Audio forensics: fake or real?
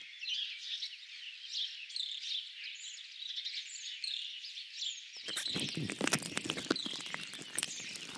real